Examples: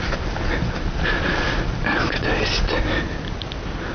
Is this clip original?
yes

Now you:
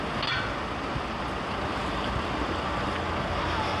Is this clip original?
yes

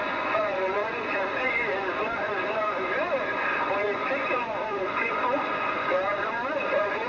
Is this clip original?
no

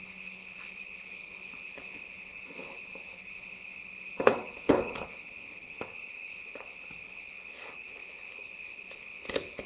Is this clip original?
no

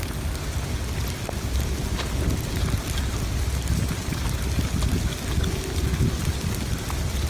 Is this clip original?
yes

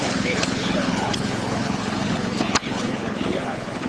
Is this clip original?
no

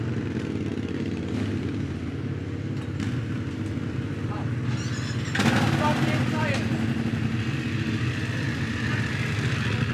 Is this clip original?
yes